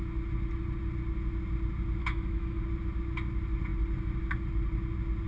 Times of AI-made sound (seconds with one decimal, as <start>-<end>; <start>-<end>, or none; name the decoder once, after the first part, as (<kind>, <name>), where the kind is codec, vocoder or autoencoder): 2.0-2.6 (autoencoder, DAC-VAE)